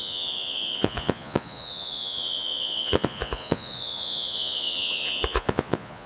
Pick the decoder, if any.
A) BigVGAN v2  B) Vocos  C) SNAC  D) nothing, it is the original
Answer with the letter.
B